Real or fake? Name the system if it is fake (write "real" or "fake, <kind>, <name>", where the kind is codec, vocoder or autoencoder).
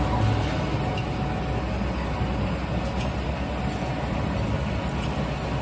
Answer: real